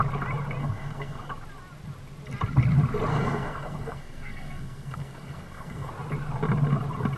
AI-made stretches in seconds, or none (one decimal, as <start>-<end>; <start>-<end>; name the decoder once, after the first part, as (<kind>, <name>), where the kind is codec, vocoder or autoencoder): 0.6-1.3 (codec, SNAC); 3.1-5.9